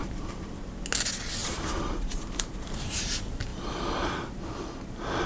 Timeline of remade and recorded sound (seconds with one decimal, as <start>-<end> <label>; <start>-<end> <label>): 0.0-0.5 remade; 0.5-1.4 recorded; 1.4-3.0 remade; 3.0-3.5 recorded; 3.5-4.4 remade; 4.4-5.3 recorded